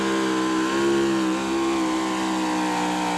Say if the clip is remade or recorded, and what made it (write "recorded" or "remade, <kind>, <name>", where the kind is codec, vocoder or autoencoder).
recorded